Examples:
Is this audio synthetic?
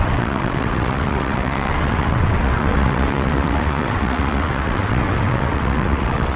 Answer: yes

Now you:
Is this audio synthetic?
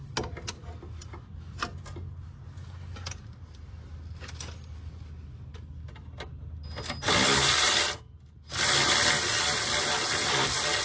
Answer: no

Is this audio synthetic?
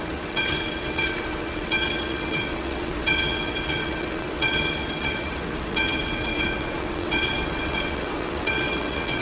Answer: yes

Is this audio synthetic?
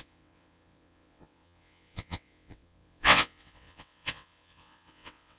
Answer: yes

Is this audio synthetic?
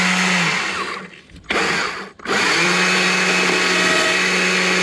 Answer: no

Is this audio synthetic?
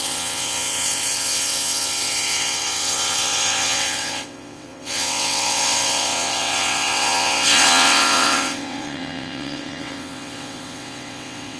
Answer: yes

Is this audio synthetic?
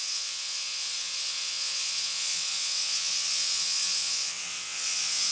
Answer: yes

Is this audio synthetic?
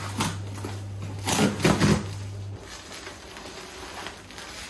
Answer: no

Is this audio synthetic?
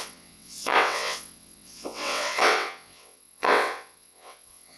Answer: yes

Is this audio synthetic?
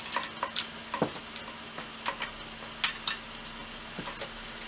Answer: no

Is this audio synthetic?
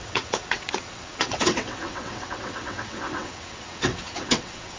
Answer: yes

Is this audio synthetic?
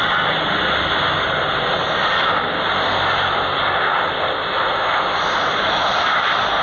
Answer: no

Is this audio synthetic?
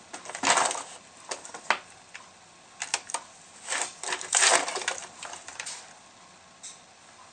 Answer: no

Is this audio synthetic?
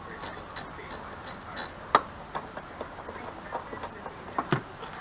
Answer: no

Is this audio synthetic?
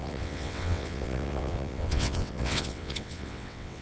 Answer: yes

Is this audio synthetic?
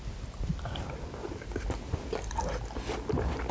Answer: no